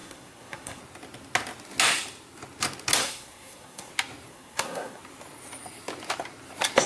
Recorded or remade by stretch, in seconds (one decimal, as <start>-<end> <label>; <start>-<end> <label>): 0.0-0.8 remade; 0.8-3.0 recorded; 3.0-3.9 remade; 3.9-4.3 recorded; 4.3-5.0 remade; 5.0-6.9 recorded